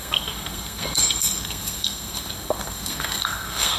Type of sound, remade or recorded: remade